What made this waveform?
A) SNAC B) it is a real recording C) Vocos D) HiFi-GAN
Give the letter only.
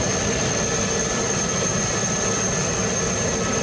B